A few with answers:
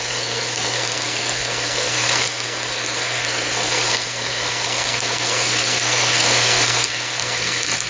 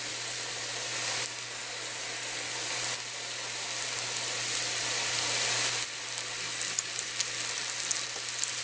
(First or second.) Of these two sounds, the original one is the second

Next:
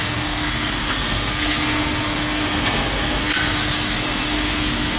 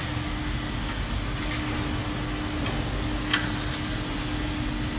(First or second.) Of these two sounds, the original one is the second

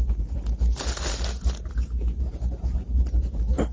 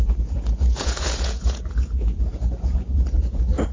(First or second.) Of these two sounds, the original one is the first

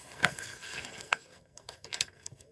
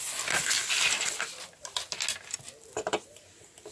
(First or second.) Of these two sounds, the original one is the second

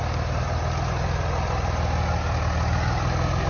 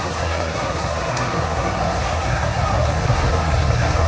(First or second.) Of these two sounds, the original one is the first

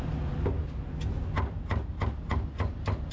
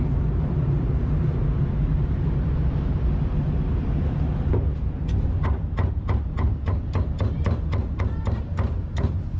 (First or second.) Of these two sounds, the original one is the first